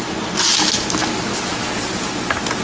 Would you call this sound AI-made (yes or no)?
no